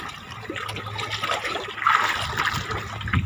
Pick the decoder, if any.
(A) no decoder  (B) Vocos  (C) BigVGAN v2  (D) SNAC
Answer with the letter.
A